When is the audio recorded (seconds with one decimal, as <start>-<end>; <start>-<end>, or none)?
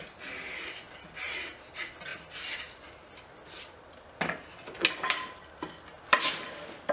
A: 0.0-6.9